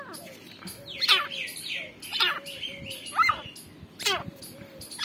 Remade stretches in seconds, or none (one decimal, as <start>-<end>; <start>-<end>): none